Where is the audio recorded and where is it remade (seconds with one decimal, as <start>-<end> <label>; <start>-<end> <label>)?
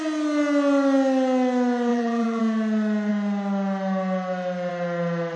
0.0-1.9 recorded; 1.9-2.4 remade; 2.4-5.4 recorded